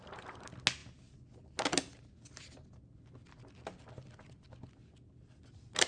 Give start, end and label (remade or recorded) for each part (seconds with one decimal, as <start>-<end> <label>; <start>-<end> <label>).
0.0-5.9 recorded